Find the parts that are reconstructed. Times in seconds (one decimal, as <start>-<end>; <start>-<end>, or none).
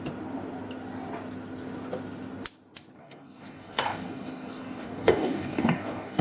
3.0-6.2